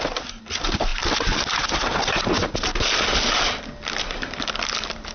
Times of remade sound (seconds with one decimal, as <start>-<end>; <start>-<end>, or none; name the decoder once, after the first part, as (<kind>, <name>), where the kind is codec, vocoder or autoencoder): 0.0-0.9 (vocoder, BigVGAN v2); 4.0-5.1